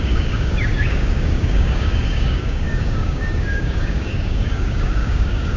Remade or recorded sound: remade